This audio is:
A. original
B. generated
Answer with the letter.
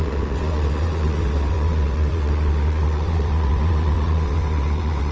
B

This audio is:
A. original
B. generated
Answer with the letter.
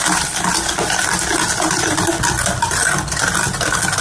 A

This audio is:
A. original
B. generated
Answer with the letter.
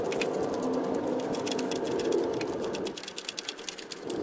A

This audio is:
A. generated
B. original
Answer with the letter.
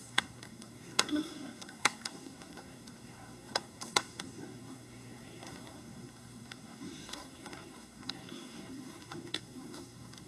A